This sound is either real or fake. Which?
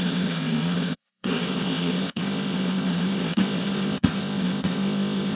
fake